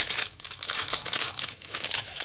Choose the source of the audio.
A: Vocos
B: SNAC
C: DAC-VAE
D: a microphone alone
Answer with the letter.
C